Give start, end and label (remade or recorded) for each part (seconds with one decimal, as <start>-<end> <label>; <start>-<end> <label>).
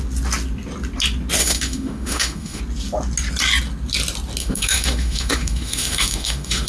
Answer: 0.0-1.4 recorded; 1.4-2.6 remade; 2.6-4.4 recorded; 4.4-6.7 remade